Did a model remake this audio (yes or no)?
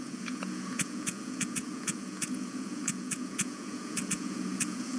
yes